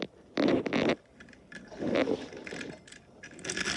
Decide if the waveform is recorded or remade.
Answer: recorded